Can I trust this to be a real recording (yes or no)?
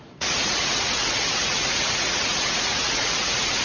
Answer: no